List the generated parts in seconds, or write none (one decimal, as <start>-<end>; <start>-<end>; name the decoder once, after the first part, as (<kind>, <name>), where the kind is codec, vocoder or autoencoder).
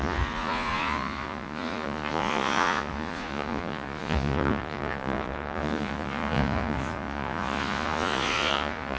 0.0-9.0 (vocoder, Vocos)